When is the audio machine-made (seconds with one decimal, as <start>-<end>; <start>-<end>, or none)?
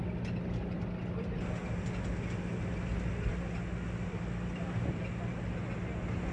none